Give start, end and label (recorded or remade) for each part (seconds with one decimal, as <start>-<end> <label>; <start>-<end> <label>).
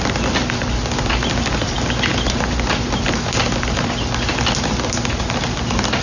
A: 0.0-6.0 recorded